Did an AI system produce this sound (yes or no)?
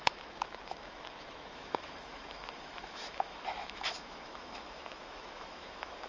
yes